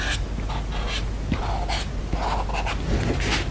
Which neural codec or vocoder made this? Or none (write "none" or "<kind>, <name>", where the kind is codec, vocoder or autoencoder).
none